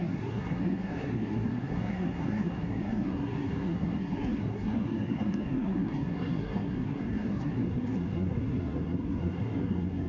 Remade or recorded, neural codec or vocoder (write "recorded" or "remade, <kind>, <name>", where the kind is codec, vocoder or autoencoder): remade, codec, SNAC